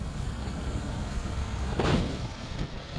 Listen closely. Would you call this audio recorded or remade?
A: remade